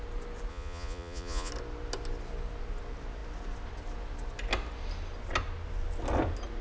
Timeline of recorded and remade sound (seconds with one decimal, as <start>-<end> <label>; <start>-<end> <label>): 0.0-0.5 recorded; 0.5-1.5 remade; 1.5-6.6 recorded